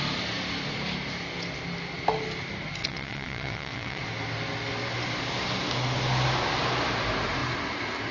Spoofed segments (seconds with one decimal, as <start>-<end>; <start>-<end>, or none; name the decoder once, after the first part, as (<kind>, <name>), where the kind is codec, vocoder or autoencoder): 2.8-4.0 (vocoder, WaveNeXt)